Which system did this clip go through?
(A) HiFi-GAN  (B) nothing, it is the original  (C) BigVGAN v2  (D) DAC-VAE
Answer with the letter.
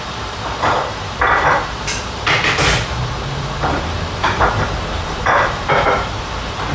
C